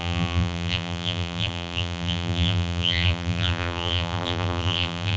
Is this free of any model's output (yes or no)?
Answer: no